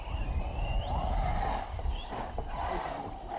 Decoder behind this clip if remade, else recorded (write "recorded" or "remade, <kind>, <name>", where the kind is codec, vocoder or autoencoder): recorded